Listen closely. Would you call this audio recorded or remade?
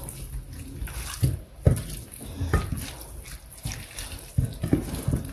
recorded